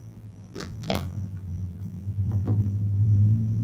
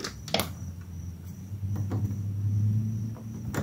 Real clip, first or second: second